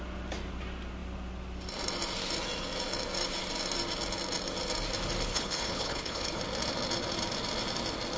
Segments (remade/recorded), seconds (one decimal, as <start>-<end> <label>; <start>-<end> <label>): 0.0-5.3 recorded; 5.3-6.4 remade; 6.4-8.2 recorded